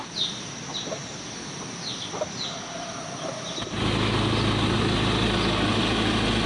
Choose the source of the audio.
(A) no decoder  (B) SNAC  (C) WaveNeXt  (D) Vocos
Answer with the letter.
A